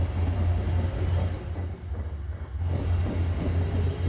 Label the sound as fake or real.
real